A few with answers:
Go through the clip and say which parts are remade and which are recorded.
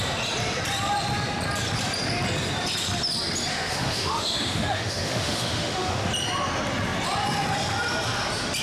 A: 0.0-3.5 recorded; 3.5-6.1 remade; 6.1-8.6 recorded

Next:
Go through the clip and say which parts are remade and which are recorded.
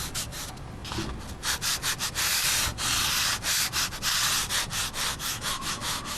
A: 0.0-5.1 recorded; 5.1-6.2 remade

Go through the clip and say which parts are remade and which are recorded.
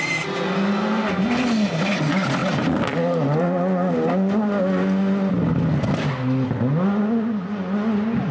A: 0.0-8.3 recorded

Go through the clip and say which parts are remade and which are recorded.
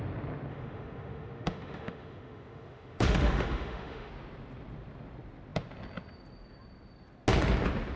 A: 0.0-0.5 recorded; 0.5-4.1 remade; 4.1-8.0 recorded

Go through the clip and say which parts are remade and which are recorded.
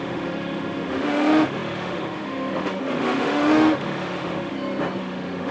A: 0.0-4.5 remade; 4.5-5.0 recorded; 5.0-5.5 remade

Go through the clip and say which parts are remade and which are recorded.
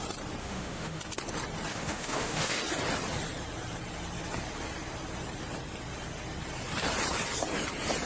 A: 0.0-0.4 recorded; 0.4-1.0 remade; 1.0-1.7 recorded; 1.7-2.6 remade; 2.6-8.1 recorded